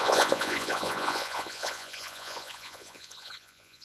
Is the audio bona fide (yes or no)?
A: no